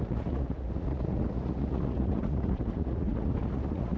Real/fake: fake